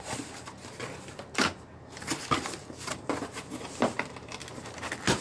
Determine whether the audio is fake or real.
real